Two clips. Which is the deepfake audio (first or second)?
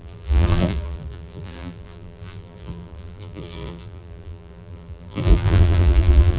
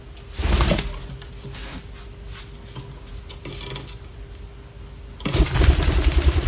first